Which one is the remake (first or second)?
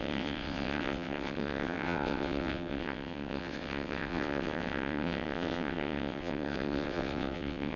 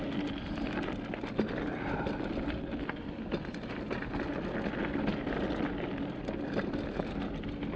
first